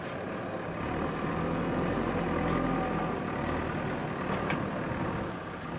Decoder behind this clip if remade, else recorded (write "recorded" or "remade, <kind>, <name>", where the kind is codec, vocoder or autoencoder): recorded